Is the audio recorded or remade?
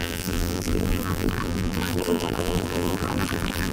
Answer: remade